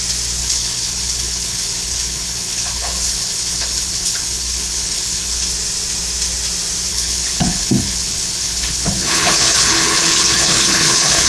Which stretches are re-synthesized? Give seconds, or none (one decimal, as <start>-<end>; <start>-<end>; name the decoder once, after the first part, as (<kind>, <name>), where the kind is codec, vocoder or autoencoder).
0.4-5.5 (codec, HILCodec); 6.9-11.3